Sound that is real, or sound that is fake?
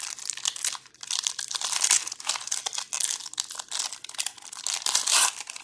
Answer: real